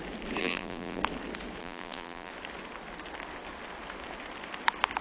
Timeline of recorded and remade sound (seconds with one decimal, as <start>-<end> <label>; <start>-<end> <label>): 0.0-0.4 recorded; 0.4-1.0 remade; 1.0-1.6 recorded; 1.6-2.3 remade; 2.3-5.0 recorded